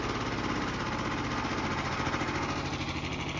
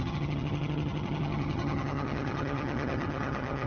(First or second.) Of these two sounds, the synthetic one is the second